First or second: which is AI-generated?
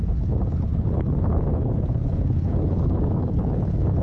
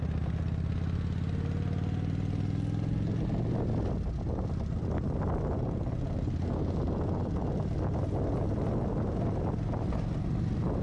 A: first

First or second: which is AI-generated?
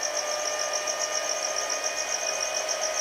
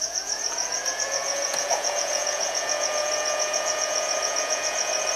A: second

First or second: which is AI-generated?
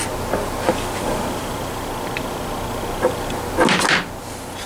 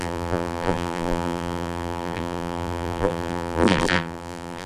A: second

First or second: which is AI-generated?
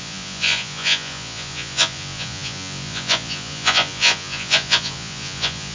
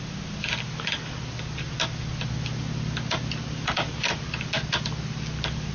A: first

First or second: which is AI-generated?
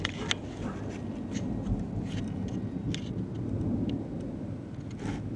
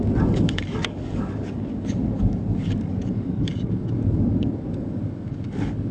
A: second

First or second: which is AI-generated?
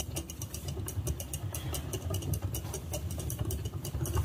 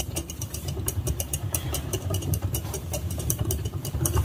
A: second